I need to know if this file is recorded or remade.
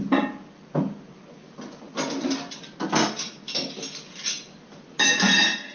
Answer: recorded